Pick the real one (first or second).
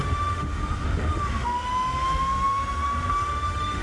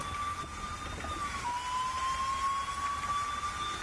second